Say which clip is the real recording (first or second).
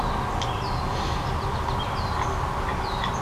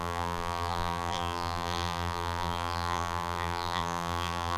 first